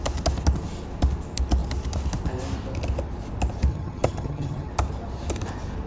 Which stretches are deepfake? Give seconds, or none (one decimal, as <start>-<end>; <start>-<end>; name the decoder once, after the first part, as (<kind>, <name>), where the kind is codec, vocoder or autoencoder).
3.7-4.7 (vocoder, HiFi-GAN)